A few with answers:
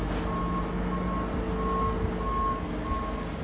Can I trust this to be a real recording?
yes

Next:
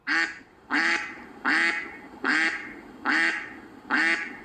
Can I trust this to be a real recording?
yes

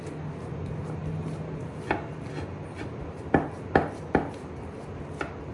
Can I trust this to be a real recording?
yes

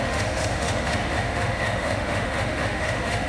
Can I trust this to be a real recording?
no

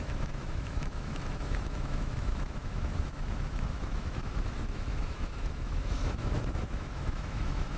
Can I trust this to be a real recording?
no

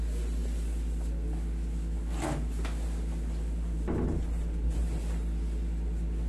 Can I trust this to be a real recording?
yes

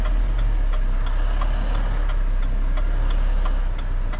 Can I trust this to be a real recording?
yes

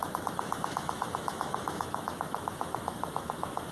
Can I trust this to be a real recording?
no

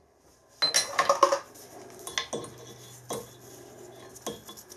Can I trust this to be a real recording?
yes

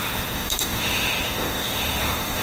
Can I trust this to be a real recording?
no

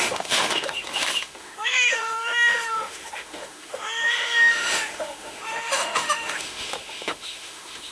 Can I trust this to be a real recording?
no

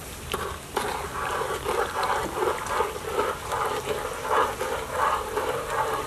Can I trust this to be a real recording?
yes